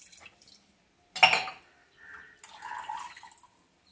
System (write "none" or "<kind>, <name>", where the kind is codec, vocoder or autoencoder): none